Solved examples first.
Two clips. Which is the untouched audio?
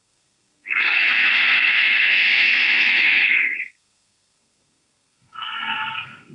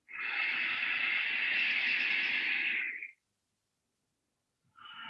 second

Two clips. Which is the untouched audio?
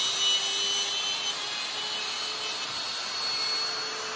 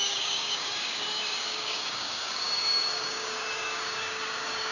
first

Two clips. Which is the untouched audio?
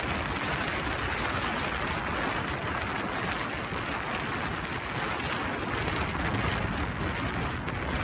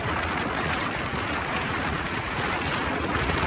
first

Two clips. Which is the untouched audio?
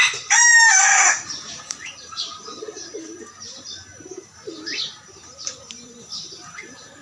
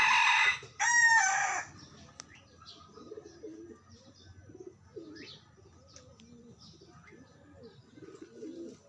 second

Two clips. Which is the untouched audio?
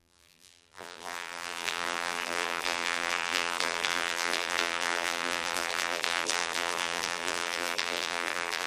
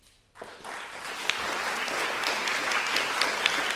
second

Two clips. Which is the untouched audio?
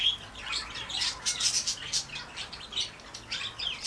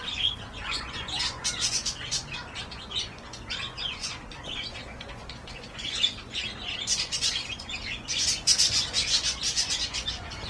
first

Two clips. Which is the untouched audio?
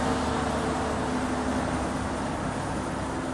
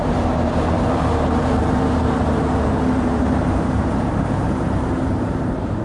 first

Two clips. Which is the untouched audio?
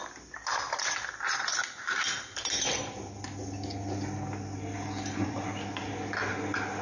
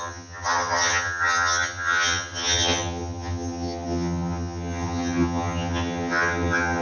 first